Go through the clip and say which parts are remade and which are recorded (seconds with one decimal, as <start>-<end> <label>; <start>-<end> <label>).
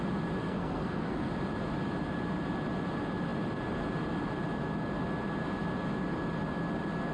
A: 0.0-0.4 recorded; 0.4-1.3 remade; 1.3-7.1 recorded